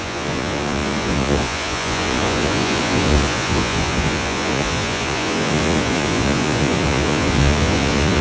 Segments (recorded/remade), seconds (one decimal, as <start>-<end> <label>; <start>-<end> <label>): 0.0-8.2 remade